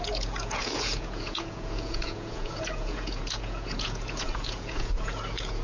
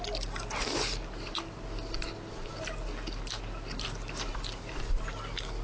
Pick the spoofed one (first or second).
first